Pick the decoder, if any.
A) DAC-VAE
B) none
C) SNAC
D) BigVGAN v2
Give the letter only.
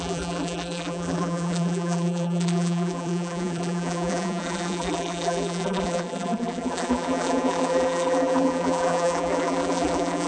D